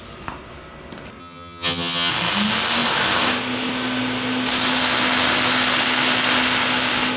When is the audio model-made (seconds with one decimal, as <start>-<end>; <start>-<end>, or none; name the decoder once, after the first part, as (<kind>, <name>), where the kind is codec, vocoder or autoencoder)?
1.2-2.1 (vocoder, HiFi-GAN)